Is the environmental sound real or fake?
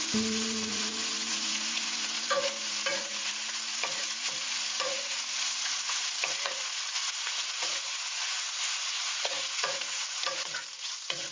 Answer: fake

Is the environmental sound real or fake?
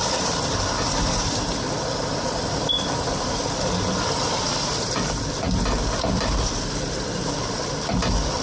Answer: fake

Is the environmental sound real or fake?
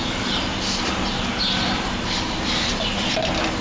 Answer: real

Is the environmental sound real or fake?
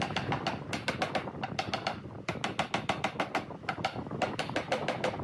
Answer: real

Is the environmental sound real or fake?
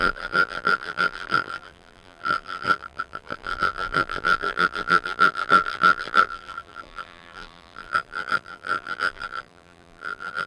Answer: fake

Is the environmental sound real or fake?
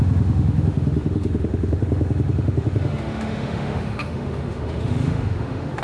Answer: fake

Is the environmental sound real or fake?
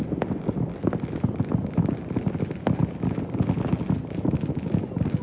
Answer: real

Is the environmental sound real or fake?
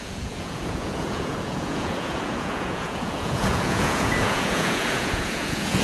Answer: fake